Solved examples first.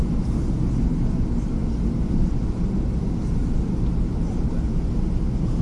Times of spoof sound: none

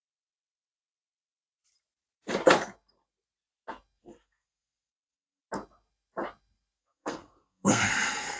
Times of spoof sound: 4.0-5.4 (codec, SNAC); 6.8-8.4

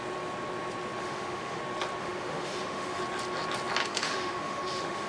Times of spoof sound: 1.0-1.6 (autoencoder, DAC-VAE); 2.0-3.0; 3.8-5.1

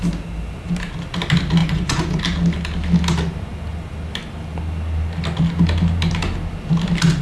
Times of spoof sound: 1.6-2.2 (vocoder, Vocos)

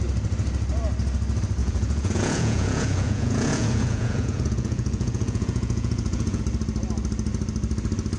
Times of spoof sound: 1.6-6.4 (vocoder, Vocos)

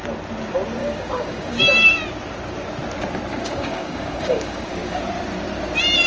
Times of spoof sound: 0.8-1.6 (codec, DAC); 3.3-5.0

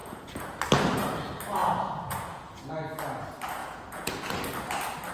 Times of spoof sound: 0.0-0.6 (vocoder, Vocos); 1.6-2.7; 3.6-4.2